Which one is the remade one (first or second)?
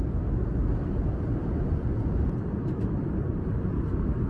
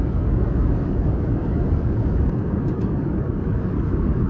second